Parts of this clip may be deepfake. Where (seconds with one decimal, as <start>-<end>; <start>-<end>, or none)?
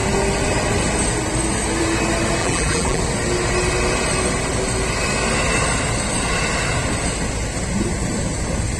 2.4-3.0